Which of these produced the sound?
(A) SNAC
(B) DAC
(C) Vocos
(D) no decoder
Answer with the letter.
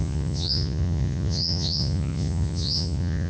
C